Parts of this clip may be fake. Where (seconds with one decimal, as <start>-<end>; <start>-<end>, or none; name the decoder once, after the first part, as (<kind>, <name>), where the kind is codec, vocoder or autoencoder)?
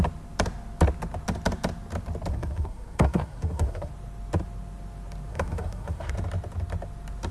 2.3-3.9 (codec, SNAC); 5.3-6.1